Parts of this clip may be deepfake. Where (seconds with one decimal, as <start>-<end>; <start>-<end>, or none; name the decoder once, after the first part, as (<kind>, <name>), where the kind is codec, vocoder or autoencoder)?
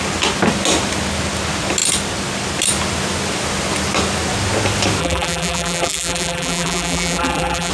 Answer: 5.0-7.7 (vocoder, BigVGAN v2)